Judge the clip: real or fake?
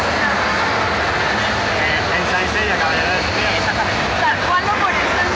real